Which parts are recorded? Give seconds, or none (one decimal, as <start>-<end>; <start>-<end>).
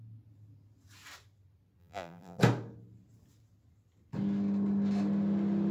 0.0-1.8; 2.4-5.7